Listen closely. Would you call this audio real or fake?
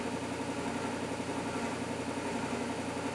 real